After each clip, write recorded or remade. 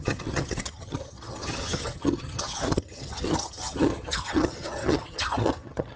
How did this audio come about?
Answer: remade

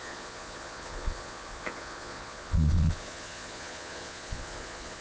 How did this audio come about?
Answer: remade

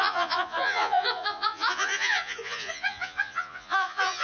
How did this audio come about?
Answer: remade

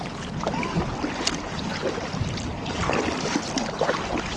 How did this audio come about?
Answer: recorded